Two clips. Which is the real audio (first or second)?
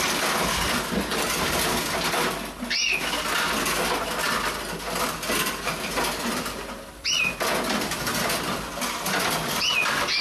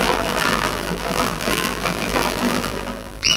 first